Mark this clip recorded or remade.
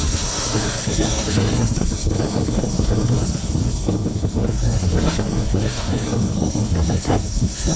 remade